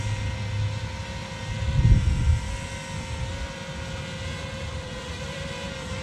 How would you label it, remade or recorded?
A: recorded